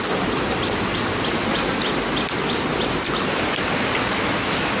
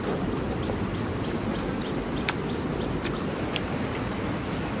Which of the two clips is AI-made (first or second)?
second